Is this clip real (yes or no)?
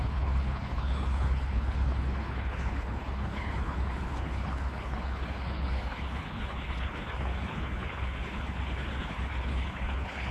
no